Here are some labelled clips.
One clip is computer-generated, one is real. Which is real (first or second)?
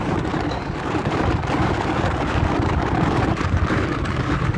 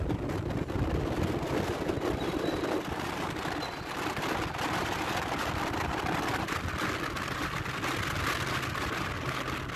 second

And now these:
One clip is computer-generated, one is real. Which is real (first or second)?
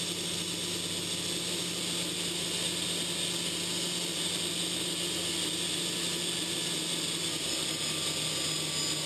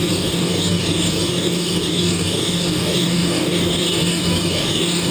first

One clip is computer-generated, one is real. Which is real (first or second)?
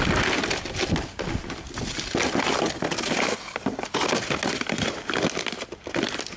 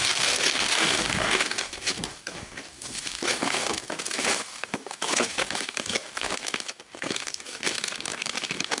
first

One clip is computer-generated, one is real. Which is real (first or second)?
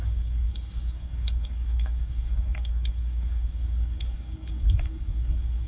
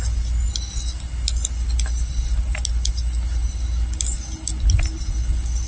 second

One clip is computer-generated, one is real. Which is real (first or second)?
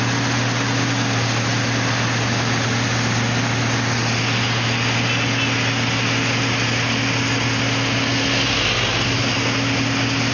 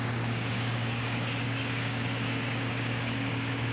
first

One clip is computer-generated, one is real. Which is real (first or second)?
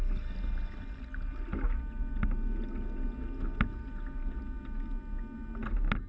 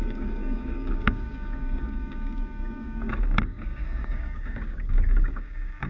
first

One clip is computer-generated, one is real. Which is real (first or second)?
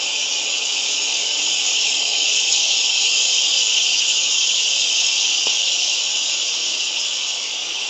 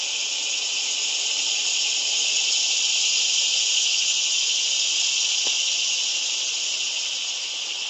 second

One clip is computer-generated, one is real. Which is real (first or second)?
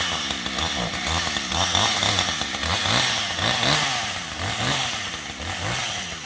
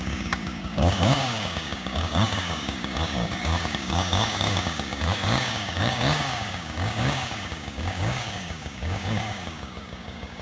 first